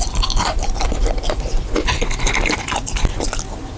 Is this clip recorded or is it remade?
recorded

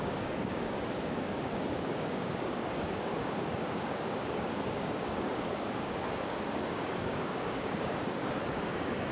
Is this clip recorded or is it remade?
remade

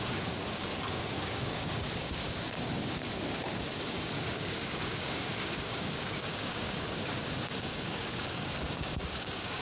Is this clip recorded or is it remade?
remade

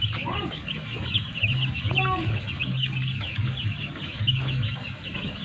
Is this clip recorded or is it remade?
remade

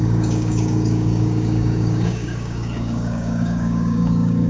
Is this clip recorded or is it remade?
remade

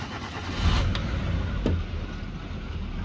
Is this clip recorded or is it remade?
recorded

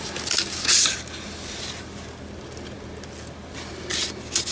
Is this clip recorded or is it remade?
recorded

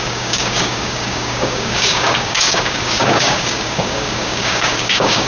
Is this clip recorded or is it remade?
remade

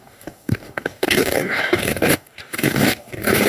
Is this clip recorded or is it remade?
remade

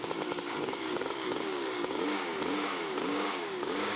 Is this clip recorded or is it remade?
remade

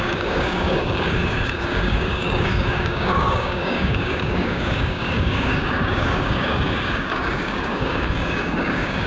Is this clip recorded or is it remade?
remade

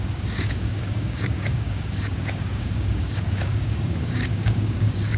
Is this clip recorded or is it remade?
remade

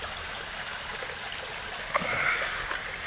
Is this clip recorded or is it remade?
recorded